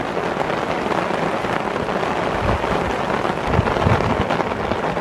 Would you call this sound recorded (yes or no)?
yes